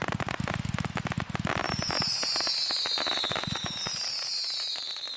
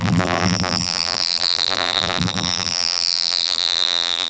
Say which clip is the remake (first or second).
second